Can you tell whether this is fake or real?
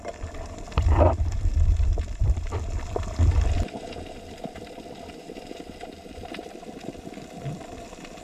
fake